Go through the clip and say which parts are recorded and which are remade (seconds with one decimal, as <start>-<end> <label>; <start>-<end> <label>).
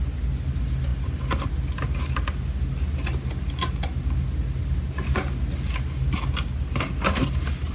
0.0-7.7 recorded